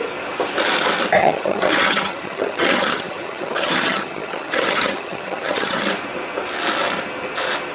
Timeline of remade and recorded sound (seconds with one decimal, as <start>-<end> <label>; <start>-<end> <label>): 0.0-1.2 recorded; 1.2-5.8 remade; 5.8-7.7 recorded